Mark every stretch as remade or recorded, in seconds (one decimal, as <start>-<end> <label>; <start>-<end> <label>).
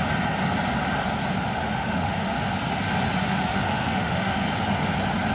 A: 0.0-1.6 recorded; 1.6-2.4 remade; 2.4-3.2 recorded; 3.2-4.4 remade; 4.4-5.3 recorded